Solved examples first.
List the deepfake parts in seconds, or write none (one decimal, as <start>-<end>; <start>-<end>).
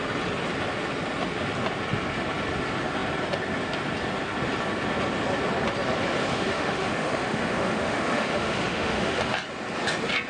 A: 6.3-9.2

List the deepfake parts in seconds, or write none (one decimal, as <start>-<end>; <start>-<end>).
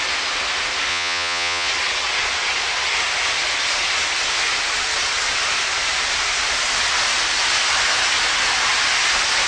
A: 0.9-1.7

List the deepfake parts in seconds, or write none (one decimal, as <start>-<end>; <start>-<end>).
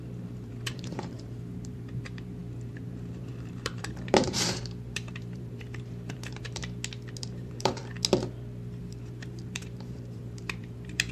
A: 0.0-6.6; 7.2-7.8; 8.8-11.1